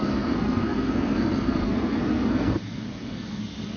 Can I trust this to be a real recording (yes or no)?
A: no